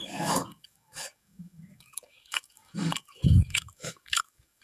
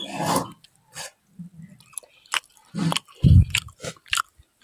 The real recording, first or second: second